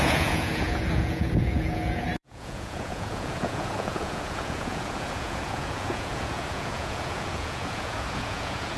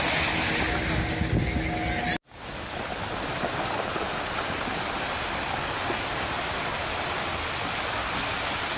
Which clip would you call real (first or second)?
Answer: second